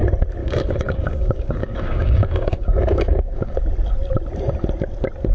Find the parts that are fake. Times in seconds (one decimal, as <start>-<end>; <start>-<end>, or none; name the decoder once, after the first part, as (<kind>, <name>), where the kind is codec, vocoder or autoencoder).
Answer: 0.4-3.6 (codec, DAC)